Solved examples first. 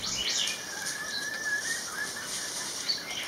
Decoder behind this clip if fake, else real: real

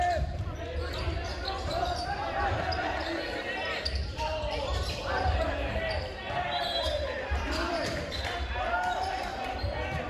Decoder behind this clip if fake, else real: fake, vocoder, BigVGAN v2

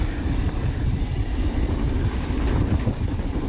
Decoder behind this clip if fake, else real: fake, vocoder, BigVGAN v2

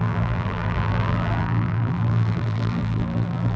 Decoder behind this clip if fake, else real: fake, vocoder, BigVGAN v2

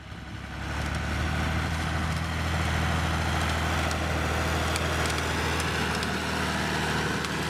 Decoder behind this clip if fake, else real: real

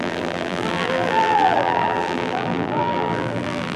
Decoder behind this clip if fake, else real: fake, vocoder, BigVGAN v2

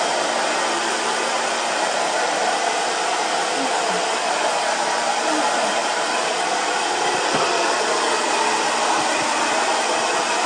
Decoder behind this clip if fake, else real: fake, vocoder, BigVGAN v2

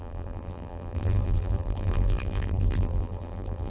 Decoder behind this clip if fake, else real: fake, vocoder, BigVGAN v2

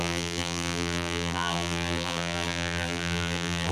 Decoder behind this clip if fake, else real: fake, vocoder, BigVGAN v2